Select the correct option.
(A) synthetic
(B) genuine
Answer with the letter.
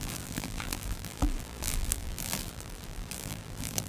A